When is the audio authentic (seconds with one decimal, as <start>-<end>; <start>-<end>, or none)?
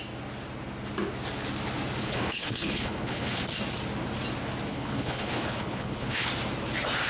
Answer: 0.0-2.0; 3.4-4.7; 6.3-7.1